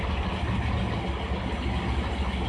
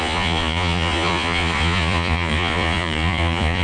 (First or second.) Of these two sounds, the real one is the first